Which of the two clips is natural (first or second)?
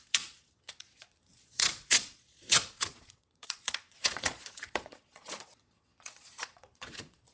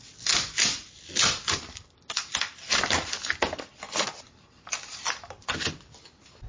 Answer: second